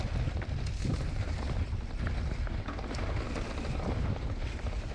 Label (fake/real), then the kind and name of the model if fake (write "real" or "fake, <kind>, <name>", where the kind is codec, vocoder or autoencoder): real